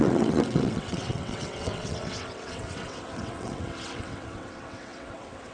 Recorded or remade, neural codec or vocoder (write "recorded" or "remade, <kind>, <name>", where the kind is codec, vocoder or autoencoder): remade, vocoder, WaveNeXt